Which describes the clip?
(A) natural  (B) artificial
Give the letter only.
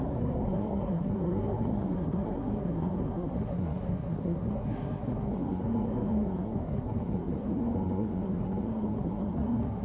B